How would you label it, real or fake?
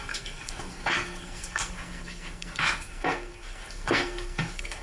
fake